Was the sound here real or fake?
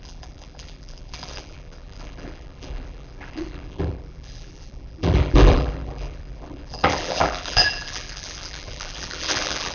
fake